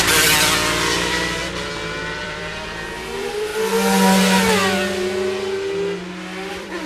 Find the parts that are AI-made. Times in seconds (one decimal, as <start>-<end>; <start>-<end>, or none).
0.0-1.4; 2.2-3.5; 6.5-6.9